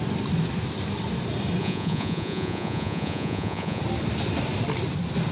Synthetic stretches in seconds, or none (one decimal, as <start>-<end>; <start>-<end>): 1.6-3.8